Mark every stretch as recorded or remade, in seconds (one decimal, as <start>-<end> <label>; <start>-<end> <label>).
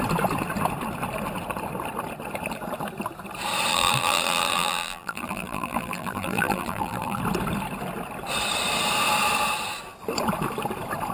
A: 0.0-3.7 recorded; 3.7-7.2 remade; 7.2-11.1 recorded